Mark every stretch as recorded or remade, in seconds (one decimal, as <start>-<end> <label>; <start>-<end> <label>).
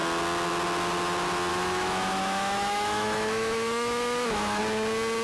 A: 0.0-1.5 recorded; 1.5-4.6 remade; 4.6-5.2 recorded